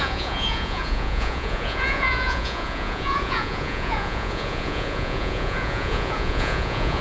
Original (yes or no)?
no